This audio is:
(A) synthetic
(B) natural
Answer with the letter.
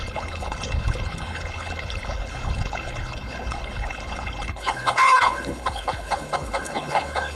A